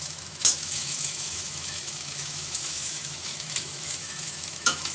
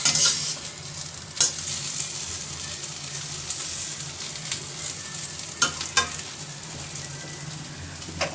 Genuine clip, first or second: second